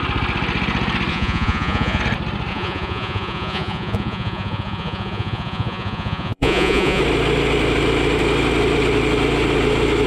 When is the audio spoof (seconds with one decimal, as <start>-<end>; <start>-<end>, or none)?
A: 1.1-2.0; 2.5-7.0